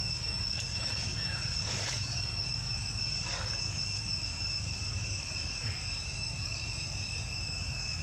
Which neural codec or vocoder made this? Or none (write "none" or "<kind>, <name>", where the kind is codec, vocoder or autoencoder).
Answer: codec, DAC